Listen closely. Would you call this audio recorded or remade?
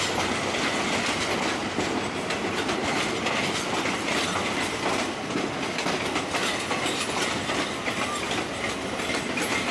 recorded